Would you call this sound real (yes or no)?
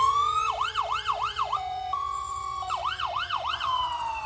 no